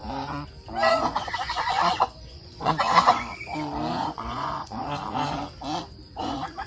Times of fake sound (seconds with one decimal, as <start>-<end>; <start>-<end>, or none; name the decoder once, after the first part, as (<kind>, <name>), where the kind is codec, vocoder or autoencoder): 0.9-3.3 (vocoder, Vocos); 3.9-4.8; 6.1-6.7